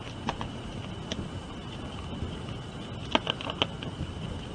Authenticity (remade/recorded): recorded